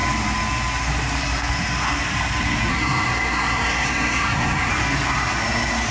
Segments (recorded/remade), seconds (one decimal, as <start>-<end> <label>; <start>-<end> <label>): 0.0-2.7 recorded; 2.7-4.7 remade; 4.7-5.9 recorded